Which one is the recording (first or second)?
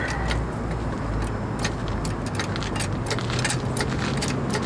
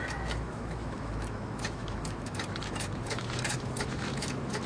first